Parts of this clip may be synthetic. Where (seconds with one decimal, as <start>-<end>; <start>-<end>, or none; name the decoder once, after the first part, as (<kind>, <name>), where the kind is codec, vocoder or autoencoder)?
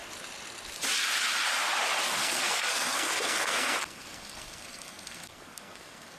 2.2-6.2 (codec, SNAC)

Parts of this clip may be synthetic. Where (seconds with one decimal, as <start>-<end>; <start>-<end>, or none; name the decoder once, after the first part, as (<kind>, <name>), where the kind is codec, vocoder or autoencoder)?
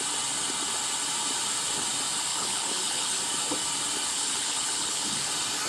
2.3-3.2 (codec, HILCodec); 4.1-5.3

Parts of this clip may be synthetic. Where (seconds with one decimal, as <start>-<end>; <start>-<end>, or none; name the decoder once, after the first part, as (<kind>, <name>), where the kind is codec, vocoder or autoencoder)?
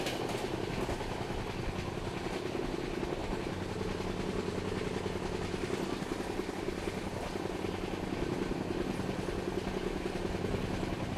none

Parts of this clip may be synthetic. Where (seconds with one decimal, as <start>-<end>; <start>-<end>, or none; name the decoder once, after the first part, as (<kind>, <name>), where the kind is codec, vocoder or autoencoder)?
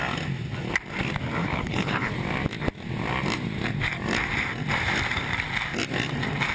1.4-2.1 (codec, HILCodec)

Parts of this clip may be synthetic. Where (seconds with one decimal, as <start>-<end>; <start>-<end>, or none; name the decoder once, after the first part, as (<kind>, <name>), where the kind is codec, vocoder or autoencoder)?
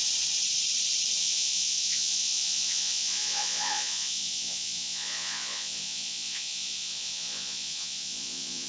1.2-8.7 (vocoder, Vocos)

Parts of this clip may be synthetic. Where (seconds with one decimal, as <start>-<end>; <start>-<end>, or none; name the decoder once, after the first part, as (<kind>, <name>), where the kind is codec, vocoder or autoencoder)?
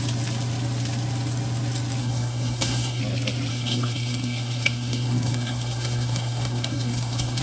2.0-3.0 (codec, SNAC); 3.5-7.4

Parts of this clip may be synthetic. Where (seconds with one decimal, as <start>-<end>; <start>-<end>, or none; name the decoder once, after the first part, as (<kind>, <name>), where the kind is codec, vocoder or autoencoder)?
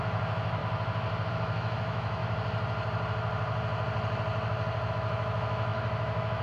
0.0-0.6 (autoencoder, DAC-VAE); 1.3-2.2; 4.9-6.4